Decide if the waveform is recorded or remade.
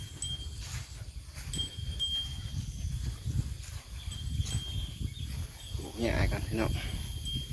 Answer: recorded